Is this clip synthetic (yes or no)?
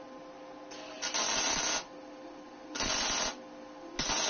no